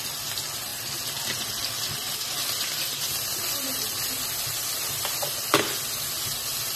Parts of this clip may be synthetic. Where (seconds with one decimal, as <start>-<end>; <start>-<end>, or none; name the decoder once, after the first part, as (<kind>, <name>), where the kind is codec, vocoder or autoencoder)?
none